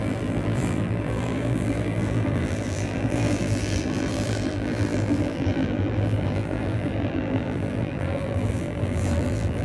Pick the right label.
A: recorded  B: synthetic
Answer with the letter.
B